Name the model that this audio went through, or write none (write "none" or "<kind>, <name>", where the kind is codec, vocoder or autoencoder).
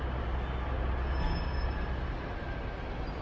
none